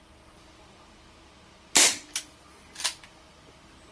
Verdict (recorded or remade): recorded